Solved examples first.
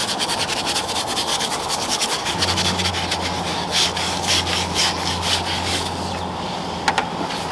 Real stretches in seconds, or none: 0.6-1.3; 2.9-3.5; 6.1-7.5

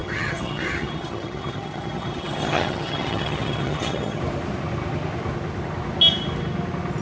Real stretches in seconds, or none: 4.2-7.0

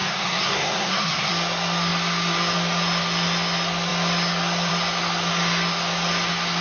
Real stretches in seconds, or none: 1.3-6.6

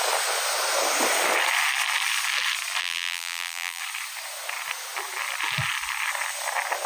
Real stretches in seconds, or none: 0.0-2.8; 3.8-6.9